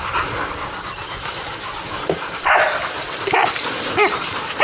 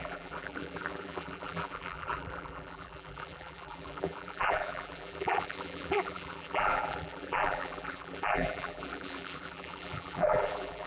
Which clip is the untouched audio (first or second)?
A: first